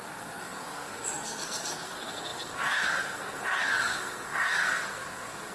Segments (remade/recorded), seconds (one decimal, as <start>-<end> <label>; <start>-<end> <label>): 0.0-5.5 remade